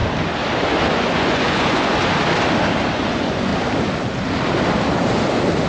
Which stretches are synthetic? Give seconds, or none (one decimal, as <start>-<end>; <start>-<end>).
0.9-2.0; 2.9-3.5

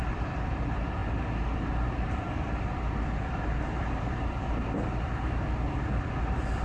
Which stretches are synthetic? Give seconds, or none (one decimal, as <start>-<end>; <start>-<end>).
0.0-6.6

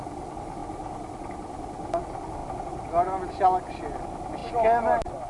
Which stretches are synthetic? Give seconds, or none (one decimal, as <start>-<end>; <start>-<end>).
none

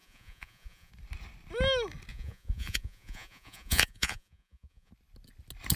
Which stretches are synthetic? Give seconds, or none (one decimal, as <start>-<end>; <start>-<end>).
0.0-0.9; 2.1-4.9